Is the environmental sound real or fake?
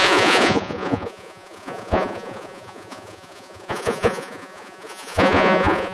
fake